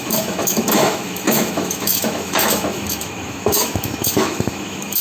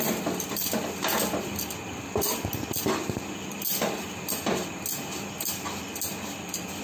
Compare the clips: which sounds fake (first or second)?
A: first